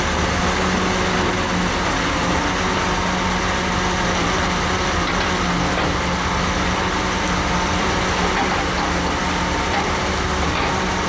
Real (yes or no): yes